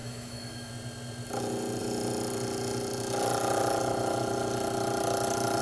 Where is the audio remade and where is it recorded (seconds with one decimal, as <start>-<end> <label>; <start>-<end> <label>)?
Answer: 0.0-0.7 remade; 0.7-5.6 recorded